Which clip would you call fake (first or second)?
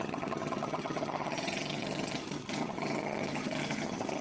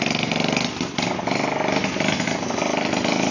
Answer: first